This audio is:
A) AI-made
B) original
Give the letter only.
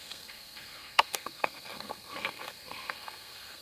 A